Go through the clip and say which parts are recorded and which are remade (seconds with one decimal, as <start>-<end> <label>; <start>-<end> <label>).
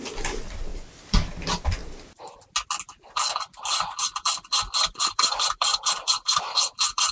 0.0-1.8 remade; 1.8-4.0 recorded; 4.0-7.1 remade